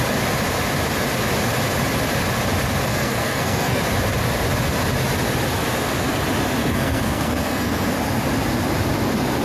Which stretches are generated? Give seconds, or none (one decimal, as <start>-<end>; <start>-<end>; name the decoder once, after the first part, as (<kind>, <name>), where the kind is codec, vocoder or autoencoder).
2.9-3.8 (codec, SNAC); 6.6-7.9